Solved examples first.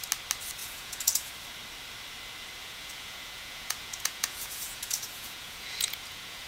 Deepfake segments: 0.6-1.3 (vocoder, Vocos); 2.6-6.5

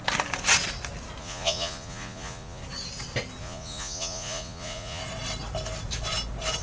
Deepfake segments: 1.2-2.6 (vocoder, Vocos); 3.4-5.0